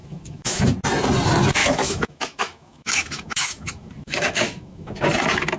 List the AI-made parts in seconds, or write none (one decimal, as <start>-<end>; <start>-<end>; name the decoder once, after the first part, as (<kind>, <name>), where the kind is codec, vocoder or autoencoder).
0.0-0.6 (autoencoder, DAC-VAE); 1.6-5.0